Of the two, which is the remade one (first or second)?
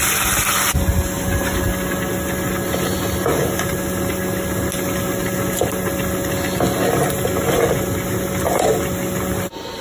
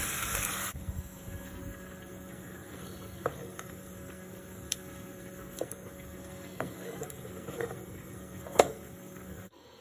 second